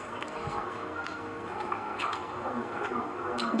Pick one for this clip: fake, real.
fake